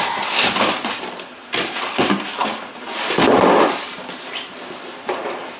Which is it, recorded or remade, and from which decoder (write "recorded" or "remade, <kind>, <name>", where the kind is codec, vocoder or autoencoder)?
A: remade, vocoder, BigVGAN v2